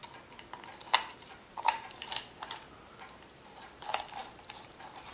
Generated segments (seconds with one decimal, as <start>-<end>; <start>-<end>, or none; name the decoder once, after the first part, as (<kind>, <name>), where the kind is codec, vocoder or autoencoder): 1.1-2.0 (vocoder, BigVGAN v2); 3.3-5.1